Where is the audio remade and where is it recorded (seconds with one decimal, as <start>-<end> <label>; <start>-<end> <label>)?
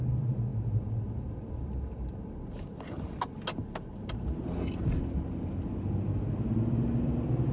0.0-7.5 recorded